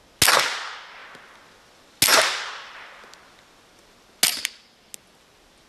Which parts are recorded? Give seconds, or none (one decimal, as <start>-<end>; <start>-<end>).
0.0-5.7